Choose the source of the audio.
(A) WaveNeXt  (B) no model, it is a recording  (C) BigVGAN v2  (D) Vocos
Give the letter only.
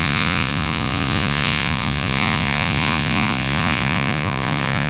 D